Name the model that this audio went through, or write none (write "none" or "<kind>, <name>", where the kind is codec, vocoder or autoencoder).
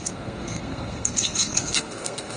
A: codec, SNAC